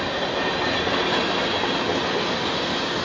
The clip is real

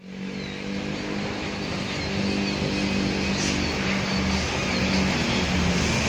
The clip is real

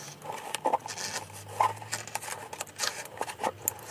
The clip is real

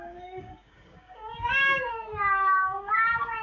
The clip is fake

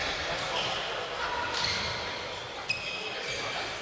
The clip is real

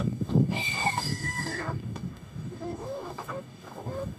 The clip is fake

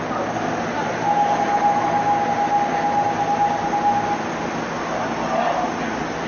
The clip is real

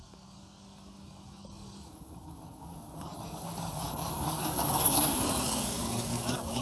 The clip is fake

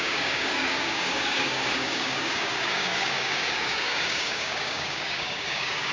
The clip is fake